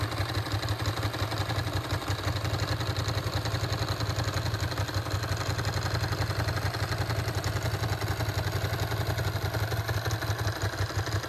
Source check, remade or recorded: recorded